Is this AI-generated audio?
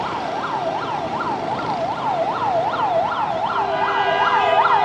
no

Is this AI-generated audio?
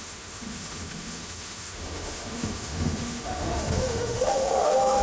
yes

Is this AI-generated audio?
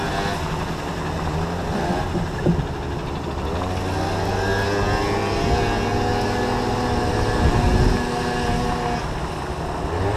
no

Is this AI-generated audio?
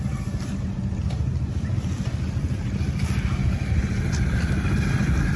no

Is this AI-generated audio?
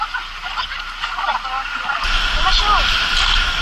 no